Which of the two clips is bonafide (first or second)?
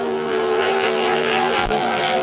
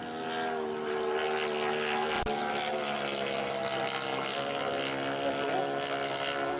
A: second